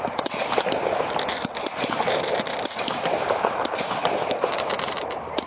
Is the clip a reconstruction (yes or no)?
yes